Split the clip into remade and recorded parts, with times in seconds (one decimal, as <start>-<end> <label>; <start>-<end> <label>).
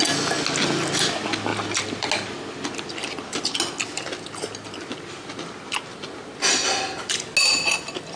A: 0.0-1.5 recorded; 1.5-2.1 remade; 2.1-8.2 recorded